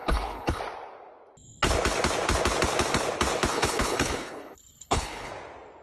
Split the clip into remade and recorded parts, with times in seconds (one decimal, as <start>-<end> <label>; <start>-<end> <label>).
0.0-0.6 remade; 0.6-3.5 recorded; 3.5-5.3 remade; 5.3-5.8 recorded